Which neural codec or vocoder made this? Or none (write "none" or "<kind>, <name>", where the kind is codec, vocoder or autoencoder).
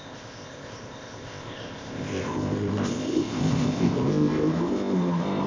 codec, ZipCodec